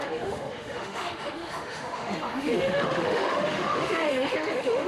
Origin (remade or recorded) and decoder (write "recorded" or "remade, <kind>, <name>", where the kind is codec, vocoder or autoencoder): remade, autoencoder, DAC-VAE